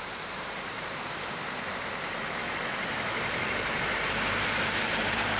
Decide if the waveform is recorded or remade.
remade